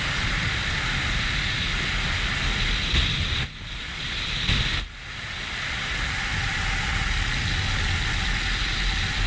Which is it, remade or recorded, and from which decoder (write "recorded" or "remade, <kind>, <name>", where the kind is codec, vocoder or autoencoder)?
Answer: recorded